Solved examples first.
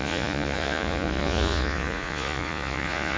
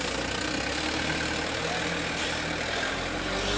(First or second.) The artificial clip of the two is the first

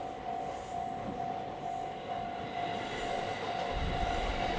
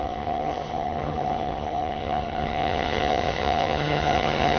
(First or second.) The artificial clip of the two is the second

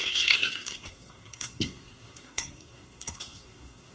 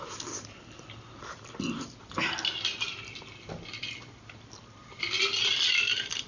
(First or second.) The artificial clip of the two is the first